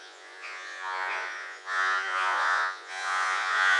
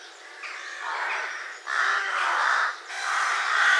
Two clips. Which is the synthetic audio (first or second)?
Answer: first